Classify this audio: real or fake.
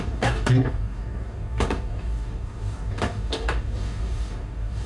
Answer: fake